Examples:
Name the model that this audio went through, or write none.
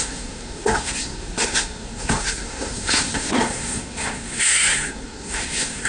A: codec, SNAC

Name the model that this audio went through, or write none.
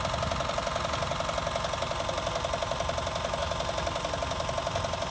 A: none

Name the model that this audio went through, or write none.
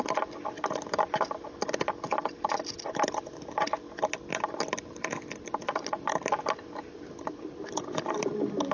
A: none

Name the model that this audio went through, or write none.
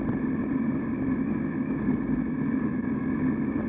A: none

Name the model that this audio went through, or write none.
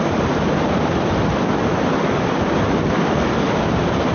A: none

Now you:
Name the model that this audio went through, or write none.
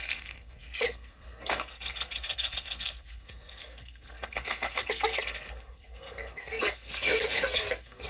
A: codec, SNAC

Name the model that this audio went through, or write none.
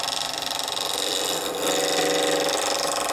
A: none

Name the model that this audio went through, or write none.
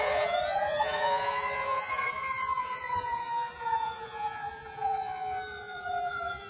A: vocoder, Vocos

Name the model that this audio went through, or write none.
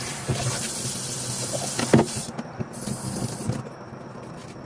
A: none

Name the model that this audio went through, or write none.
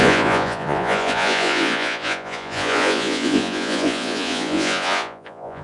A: vocoder, Vocos